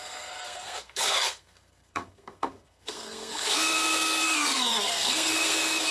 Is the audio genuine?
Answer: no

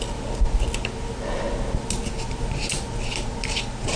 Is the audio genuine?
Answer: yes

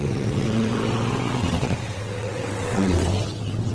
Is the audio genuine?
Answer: no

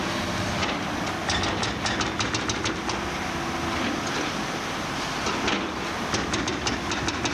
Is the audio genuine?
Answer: yes